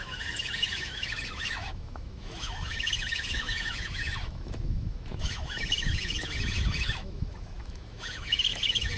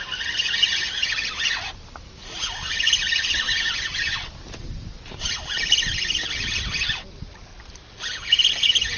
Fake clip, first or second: first